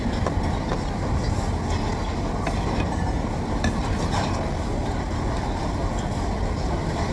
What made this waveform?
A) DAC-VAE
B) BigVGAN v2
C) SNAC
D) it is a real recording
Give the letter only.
D